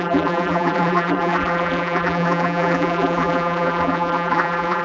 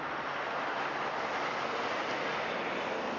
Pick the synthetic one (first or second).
first